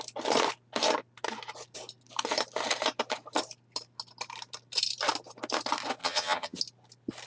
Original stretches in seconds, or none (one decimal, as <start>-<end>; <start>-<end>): 0.0-6.0; 6.6-7.3